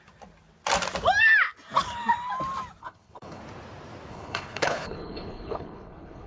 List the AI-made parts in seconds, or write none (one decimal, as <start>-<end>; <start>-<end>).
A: 2.8-3.4; 4.1-6.3